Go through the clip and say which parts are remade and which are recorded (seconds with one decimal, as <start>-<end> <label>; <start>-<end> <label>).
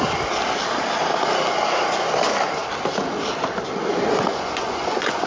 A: 0.0-4.3 recorded; 4.3-5.3 remade